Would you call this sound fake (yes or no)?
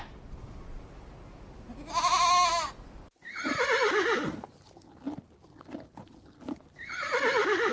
no